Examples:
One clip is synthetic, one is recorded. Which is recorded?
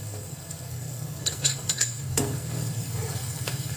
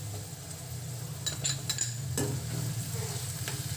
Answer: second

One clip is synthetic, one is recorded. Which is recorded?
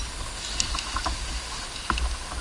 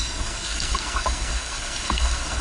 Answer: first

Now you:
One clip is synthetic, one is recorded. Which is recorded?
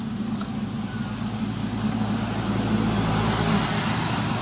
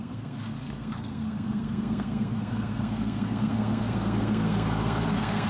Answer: first